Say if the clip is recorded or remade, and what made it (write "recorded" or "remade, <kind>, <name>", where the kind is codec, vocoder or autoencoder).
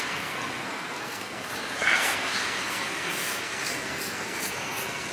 remade, codec, SNAC